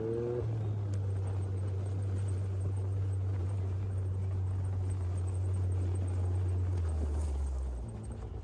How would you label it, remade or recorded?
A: recorded